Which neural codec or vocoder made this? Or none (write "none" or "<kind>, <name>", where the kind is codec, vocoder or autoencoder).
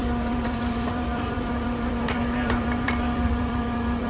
vocoder, BigVGAN v2